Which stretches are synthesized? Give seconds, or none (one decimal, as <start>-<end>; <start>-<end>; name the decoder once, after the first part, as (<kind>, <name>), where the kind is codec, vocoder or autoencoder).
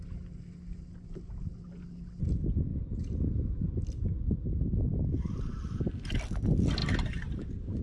2.7-3.6 (vocoder, BigVGAN v2); 6.8-7.8